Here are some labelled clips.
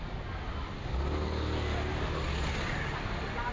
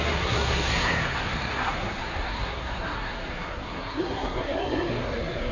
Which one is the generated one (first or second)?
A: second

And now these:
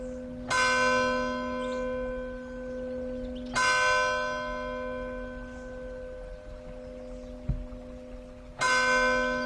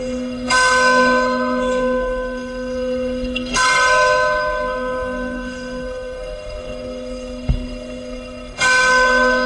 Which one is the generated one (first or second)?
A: second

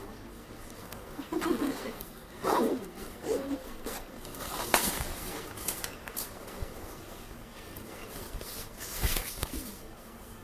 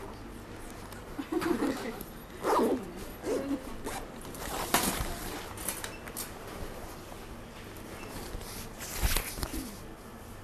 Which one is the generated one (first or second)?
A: first